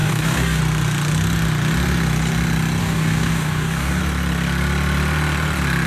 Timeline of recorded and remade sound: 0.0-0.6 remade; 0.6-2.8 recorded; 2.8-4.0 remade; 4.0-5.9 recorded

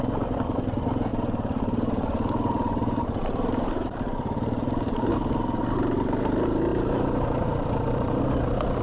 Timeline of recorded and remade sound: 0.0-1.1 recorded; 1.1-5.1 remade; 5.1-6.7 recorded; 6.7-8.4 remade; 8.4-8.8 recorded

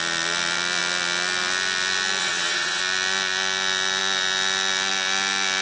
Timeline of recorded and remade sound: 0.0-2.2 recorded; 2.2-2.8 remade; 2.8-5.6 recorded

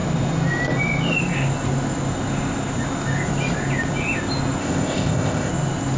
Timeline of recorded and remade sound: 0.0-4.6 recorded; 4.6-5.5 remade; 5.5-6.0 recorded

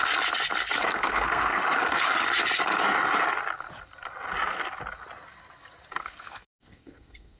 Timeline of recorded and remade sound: 0.0-0.8 recorded; 0.8-1.6 remade; 1.6-6.0 recorded; 6.0-7.4 remade

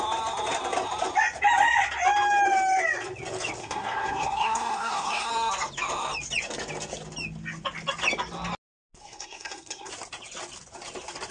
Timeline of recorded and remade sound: 0.0-3.6 recorded; 3.6-5.3 remade; 5.3-9.0 recorded; 9.0-9.9 remade; 9.9-11.3 recorded

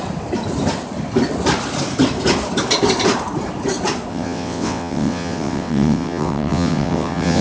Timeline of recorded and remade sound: 0.0-4.1 recorded; 4.1-7.4 remade